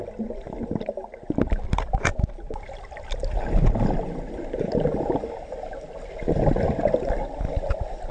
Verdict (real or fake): real